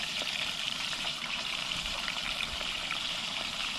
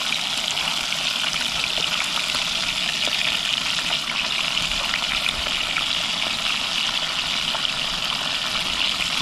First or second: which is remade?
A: first